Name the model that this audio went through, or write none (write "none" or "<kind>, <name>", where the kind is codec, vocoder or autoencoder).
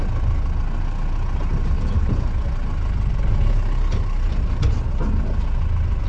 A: none